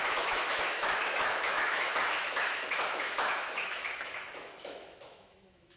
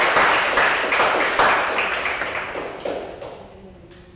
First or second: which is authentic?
second